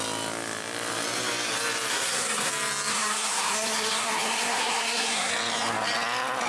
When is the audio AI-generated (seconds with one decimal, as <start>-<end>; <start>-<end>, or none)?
1.9-2.5; 2.9-5.3